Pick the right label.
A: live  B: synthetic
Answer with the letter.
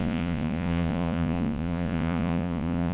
B